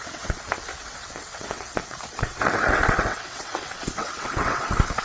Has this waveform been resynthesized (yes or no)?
yes